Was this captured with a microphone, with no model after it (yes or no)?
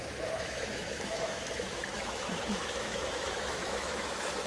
no